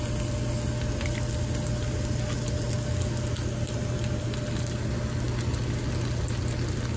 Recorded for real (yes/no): yes